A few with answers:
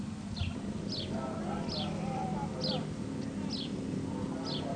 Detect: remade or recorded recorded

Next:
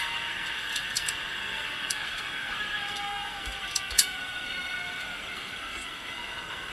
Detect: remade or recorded remade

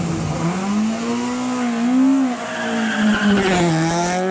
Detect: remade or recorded recorded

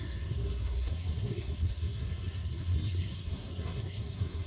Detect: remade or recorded remade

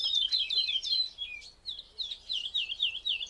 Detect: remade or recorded remade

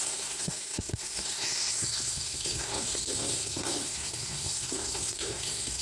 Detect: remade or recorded remade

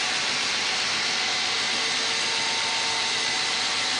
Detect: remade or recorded recorded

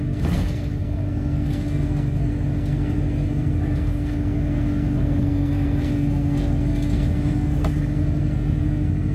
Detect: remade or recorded remade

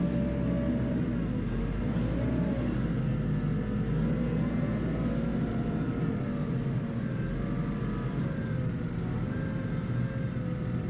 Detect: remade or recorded recorded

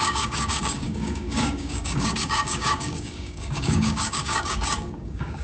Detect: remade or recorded remade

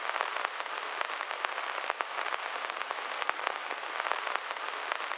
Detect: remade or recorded recorded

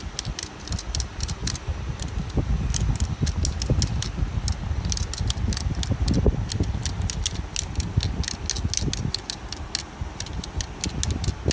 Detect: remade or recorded recorded